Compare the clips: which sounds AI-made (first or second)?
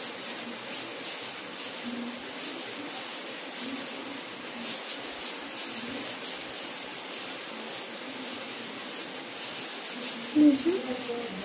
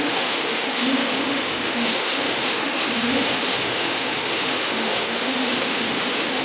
second